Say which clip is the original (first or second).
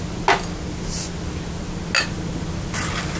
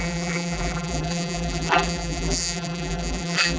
first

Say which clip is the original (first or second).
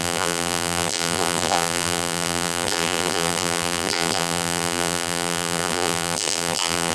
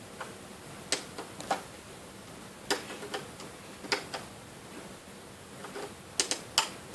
second